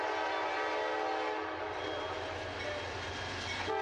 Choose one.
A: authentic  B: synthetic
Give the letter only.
A